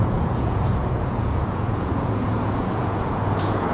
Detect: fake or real fake